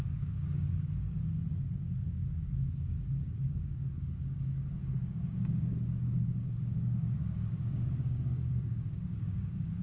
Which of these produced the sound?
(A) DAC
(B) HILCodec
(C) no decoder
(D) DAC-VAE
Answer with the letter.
A